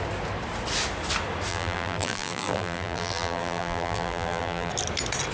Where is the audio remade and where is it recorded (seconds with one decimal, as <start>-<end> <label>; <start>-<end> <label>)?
0.0-1.5 recorded; 1.5-4.7 remade; 4.7-5.3 recorded

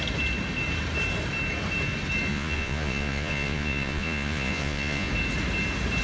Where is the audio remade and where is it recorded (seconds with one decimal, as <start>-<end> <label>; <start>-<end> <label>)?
0.0-2.3 recorded; 2.3-5.1 remade; 5.1-6.0 recorded